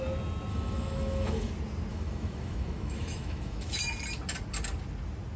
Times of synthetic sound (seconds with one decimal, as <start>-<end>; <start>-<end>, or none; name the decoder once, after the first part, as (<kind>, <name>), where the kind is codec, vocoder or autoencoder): 0.5-1.5 (autoencoder, DAC-VAE); 1.9-3.8